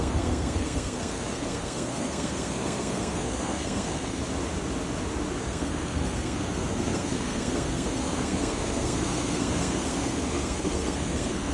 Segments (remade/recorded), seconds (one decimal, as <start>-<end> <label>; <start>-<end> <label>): 0.0-4.2 remade; 4.2-5.4 recorded; 5.4-11.5 remade